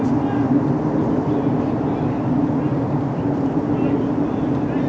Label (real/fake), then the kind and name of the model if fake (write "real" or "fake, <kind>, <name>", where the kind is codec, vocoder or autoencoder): real